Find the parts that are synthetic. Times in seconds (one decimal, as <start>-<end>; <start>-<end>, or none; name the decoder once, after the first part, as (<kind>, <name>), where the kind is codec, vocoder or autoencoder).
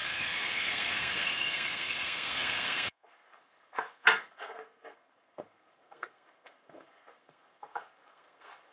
0.0-8.7 (codec, SNAC)